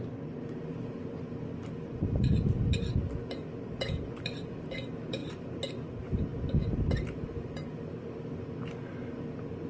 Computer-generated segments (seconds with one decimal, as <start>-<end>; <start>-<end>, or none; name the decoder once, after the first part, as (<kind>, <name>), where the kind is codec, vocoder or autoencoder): 0.0-5.2 (vocoder, BigVGAN v2); 5.7-6.3; 6.8-9.7